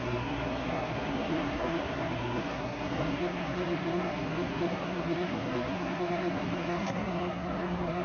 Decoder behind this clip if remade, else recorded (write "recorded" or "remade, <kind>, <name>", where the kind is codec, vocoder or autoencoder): remade, codec, SNAC